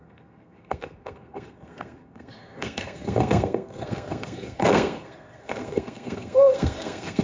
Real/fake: fake